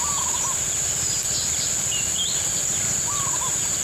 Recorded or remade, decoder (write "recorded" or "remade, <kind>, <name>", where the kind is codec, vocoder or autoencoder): recorded